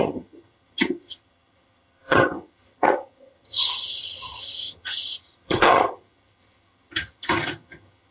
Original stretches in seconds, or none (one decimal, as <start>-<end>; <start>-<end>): none